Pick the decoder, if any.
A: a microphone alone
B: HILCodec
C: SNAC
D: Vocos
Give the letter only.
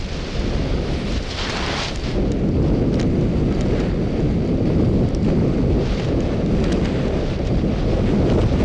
A